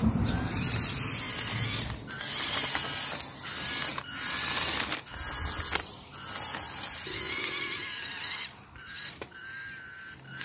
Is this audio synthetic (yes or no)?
no